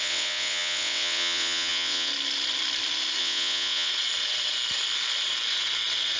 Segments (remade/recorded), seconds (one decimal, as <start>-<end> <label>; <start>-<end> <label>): 0.0-2.1 remade; 2.1-3.2 recorded; 3.2-3.9 remade; 3.9-6.2 recorded